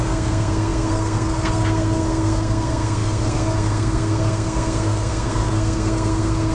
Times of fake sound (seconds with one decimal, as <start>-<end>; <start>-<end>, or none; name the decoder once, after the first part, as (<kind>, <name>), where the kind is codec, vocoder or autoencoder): 0.0-6.5 (codec, SNAC)